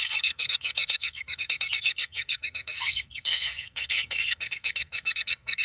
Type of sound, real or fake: fake